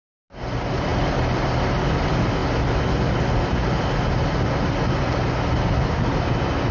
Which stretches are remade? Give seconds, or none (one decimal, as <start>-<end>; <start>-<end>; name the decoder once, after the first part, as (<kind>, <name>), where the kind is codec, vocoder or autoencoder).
none